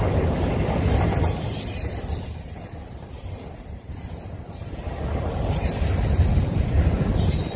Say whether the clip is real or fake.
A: real